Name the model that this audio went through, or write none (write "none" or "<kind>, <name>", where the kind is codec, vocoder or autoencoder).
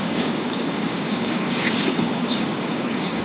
codec, DAC